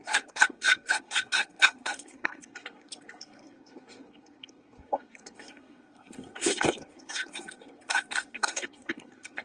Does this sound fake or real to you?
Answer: fake